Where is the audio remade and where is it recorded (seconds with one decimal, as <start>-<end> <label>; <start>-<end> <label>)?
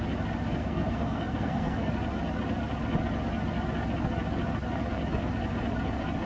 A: 0.0-0.6 recorded; 0.6-1.9 remade; 1.9-6.3 recorded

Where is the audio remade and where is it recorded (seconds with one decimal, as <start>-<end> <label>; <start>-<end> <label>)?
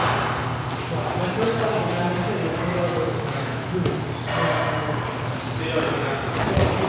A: 0.0-2.4 recorded; 2.4-3.9 remade; 3.9-6.9 recorded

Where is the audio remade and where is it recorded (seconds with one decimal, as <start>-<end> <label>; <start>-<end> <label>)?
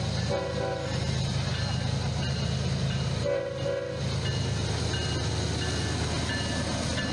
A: 0.0-7.1 recorded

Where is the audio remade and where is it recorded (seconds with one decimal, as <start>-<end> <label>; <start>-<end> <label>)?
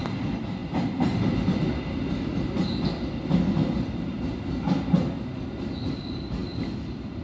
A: 0.0-7.2 recorded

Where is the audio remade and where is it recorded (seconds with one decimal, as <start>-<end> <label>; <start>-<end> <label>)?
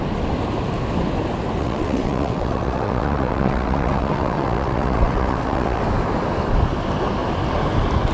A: 0.0-1.6 recorded; 1.6-5.8 remade; 5.8-8.1 recorded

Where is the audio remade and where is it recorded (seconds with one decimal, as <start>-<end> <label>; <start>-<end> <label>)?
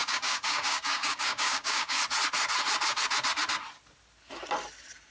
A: 0.0-2.0 remade; 2.0-5.1 recorded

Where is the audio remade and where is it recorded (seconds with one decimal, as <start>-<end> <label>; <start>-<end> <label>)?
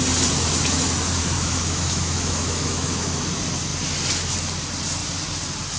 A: 0.0-1.2 recorded; 1.2-3.1 remade; 3.1-5.8 recorded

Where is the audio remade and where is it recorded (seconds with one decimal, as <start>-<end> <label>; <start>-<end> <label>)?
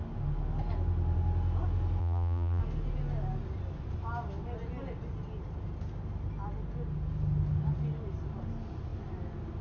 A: 0.0-2.0 recorded; 2.0-2.6 remade; 2.6-9.6 recorded